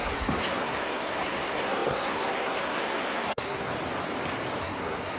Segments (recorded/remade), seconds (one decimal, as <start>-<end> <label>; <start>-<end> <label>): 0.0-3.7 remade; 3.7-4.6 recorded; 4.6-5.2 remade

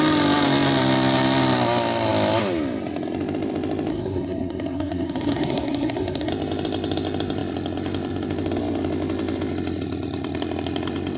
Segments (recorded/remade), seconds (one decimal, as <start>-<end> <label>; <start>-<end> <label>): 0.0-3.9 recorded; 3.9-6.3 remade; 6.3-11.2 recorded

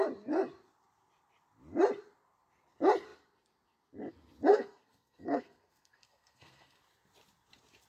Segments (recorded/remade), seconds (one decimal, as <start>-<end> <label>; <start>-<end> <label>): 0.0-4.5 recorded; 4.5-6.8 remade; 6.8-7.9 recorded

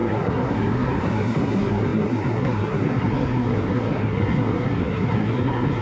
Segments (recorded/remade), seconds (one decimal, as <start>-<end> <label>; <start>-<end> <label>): 0.0-5.8 remade

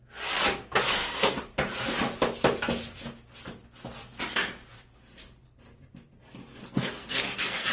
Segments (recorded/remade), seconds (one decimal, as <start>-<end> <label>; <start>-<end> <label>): 0.0-0.6 recorded; 0.6-1.4 remade; 1.4-6.5 recorded; 6.5-7.7 remade

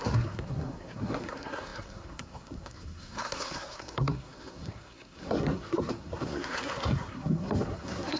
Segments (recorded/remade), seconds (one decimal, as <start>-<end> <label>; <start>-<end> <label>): 0.0-8.2 remade

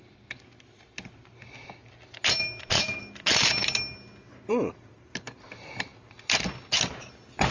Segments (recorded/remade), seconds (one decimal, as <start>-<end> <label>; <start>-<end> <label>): 0.0-7.5 recorded

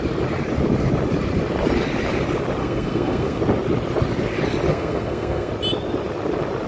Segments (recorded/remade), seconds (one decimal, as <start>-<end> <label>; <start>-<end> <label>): 0.0-2.6 recorded; 2.6-3.4 remade; 3.4-4.7 recorded; 4.7-5.5 remade; 5.5-6.7 recorded